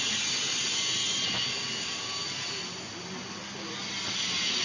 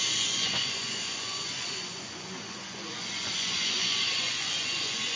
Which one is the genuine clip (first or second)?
first